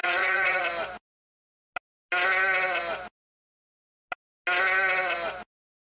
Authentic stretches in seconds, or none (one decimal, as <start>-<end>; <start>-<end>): 0.6-5.9